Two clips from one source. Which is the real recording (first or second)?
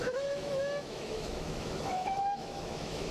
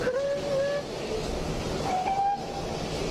second